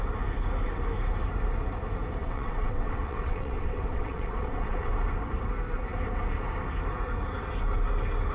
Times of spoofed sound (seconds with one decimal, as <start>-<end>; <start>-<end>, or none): 2.2-4.9